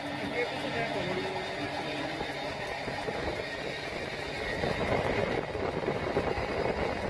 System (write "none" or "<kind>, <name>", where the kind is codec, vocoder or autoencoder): none